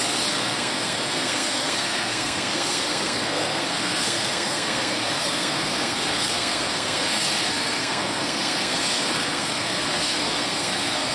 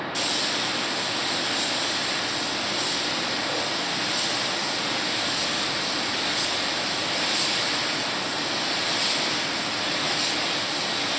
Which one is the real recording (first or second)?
second